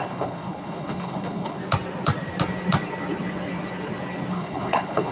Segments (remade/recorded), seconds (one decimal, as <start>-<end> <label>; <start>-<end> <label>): 0.0-1.6 remade; 1.6-4.3 recorded; 4.3-5.1 remade